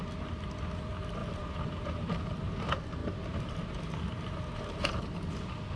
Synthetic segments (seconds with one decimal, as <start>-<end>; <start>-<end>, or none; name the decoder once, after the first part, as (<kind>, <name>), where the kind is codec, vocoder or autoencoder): 1.2-2.5 (vocoder, BigVGAN v2); 3.0-4.9